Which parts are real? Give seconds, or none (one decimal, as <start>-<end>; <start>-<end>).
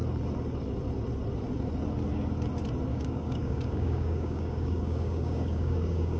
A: 0.0-2.9